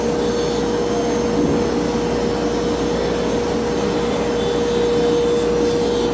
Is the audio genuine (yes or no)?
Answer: yes